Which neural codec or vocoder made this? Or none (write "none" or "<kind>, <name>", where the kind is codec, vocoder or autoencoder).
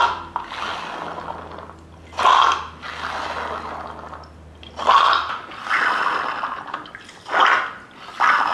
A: none